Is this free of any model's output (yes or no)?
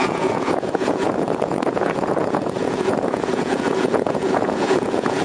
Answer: no